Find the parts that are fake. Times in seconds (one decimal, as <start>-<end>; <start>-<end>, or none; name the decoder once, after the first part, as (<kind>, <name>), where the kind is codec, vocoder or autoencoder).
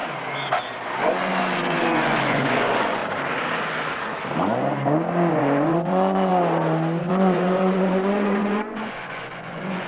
1.0-3.0 (vocoder, Vocos); 5.3-6.3; 7.0-9.9